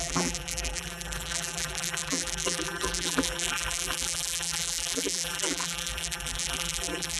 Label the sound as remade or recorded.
remade